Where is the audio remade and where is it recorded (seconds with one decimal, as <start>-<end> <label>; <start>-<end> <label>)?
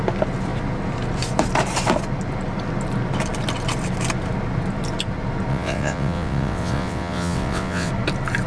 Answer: 0.0-5.5 recorded; 5.5-7.9 remade; 7.9-8.5 recorded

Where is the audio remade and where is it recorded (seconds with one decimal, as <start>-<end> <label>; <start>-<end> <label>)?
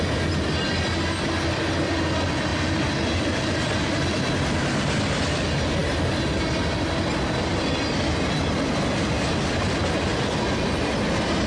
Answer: 0.0-11.5 recorded